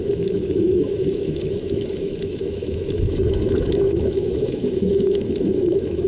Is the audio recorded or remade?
remade